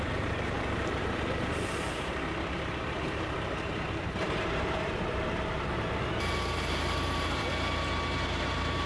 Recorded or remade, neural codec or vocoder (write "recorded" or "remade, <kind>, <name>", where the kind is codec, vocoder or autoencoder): remade, vocoder, BigVGAN v2